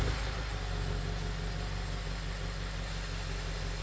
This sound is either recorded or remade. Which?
recorded